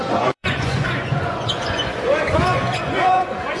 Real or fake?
fake